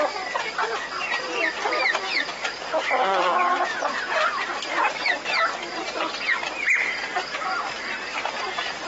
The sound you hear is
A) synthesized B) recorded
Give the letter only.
B